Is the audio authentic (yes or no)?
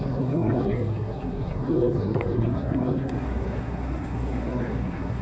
no